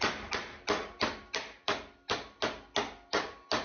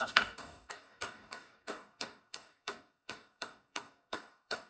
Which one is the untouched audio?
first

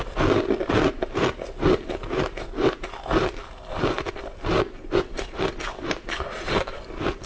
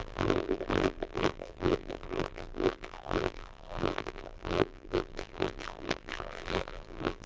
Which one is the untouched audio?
first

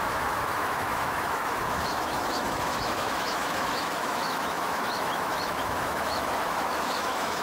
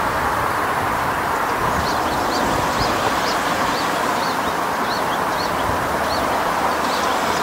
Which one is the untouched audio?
second